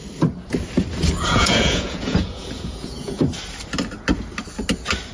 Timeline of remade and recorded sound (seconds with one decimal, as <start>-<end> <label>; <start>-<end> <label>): 0.0-1.3 recorded; 1.3-3.2 remade; 3.2-5.1 recorded